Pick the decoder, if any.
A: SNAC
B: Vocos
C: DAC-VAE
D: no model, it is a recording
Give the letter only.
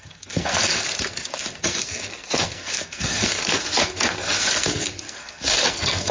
A